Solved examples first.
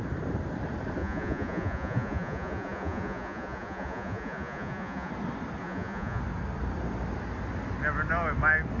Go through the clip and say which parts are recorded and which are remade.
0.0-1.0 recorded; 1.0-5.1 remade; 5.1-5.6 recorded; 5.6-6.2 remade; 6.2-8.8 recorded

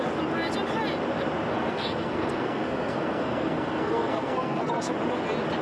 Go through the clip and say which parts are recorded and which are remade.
0.0-1.5 recorded; 1.5-4.9 remade; 4.9-5.6 recorded

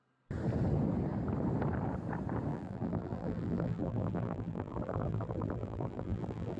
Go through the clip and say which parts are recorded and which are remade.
0.0-2.5 recorded; 2.5-6.6 remade

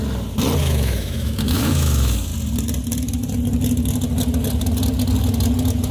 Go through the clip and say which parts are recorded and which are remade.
0.0-0.6 recorded; 0.6-2.3 remade; 2.3-5.9 recorded

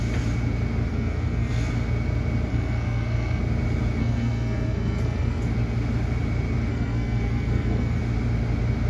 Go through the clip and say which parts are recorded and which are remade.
0.0-0.9 recorded; 0.9-1.7 remade; 1.7-2.5 recorded; 2.5-3.4 remade; 3.4-4.0 recorded; 4.0-5.4 remade; 5.4-6.7 recorded; 6.7-8.0 remade; 8.0-8.9 recorded

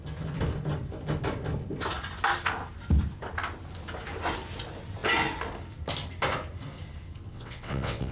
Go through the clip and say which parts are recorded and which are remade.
0.0-7.3 recorded; 7.3-8.1 remade